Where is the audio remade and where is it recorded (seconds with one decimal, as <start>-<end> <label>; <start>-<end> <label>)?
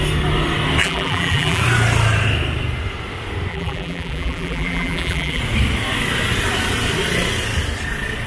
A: 0.0-0.8 recorded; 0.8-1.6 remade; 1.6-3.5 recorded; 3.5-5.4 remade; 5.4-8.3 recorded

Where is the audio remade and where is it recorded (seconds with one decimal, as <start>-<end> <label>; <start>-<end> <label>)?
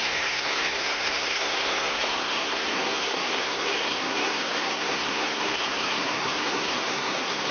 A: 0.0-7.5 remade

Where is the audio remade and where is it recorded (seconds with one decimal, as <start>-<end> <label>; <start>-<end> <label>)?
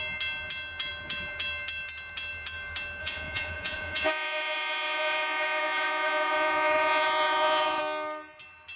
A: 0.0-3.0 recorded; 3.0-7.8 remade; 7.8-8.8 recorded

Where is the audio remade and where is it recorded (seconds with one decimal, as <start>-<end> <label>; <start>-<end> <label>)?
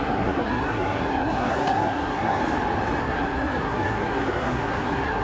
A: 0.0-2.4 remade; 2.4-3.0 recorded; 3.0-5.2 remade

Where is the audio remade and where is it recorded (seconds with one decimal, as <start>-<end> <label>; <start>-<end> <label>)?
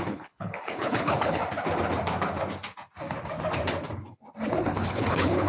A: 0.0-1.4 remade; 1.4-4.7 recorded; 4.7-5.5 remade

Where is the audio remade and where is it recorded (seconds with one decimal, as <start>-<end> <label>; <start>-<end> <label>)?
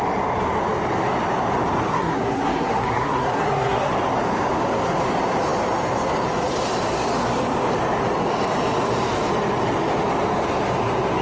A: 0.0-1.9 recorded; 1.9-3.9 remade; 3.9-11.2 recorded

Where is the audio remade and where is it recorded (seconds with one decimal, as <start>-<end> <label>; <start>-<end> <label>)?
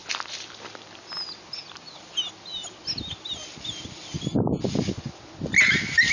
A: 0.0-0.5 remade; 0.5-6.1 recorded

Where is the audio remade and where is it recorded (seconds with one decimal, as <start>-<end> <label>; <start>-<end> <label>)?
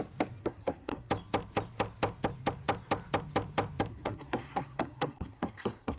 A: 0.0-0.4 recorded; 0.4-1.1 remade; 1.1-3.9 recorded; 3.9-6.0 remade